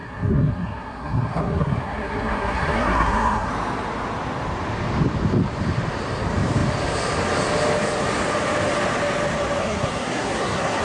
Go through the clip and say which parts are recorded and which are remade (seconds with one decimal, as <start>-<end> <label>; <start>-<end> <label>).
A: 0.0-3.5 remade; 3.5-9.6 recorded; 9.6-10.8 remade